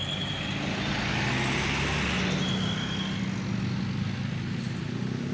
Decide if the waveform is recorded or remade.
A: recorded